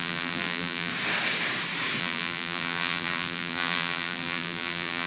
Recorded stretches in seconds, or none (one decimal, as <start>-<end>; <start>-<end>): 0.9-2.0